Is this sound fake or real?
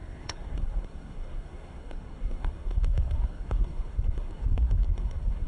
fake